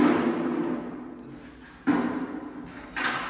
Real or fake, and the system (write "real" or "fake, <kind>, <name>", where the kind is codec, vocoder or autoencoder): real